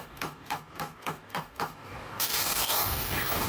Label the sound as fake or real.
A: fake